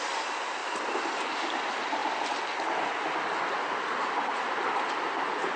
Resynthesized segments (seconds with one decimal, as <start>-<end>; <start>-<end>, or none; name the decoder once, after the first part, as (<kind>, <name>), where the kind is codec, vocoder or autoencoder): none